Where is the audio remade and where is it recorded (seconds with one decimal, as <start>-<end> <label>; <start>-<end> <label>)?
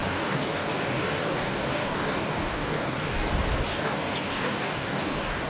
0.0-3.3 remade; 3.3-3.7 recorded; 3.7-5.5 remade